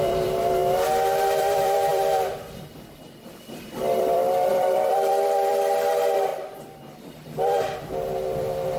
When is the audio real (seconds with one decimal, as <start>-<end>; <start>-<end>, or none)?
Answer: 0.6-1.4; 6.3-7.0